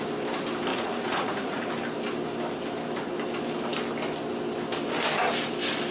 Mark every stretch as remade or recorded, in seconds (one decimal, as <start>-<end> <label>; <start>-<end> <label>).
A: 0.0-0.7 recorded; 0.7-1.7 remade; 1.7-5.9 recorded